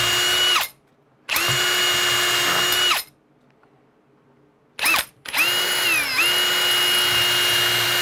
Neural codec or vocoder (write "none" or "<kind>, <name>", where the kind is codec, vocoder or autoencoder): none